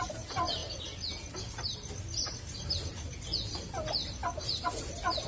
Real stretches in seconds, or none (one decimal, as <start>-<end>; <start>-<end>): 0.0-5.3